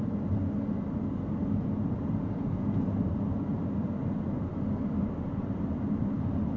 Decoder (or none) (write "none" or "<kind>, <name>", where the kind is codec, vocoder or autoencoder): none